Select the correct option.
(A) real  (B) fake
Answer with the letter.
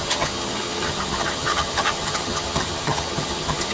B